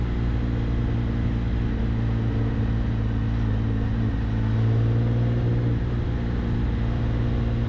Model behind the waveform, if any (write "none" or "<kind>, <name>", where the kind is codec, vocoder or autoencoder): none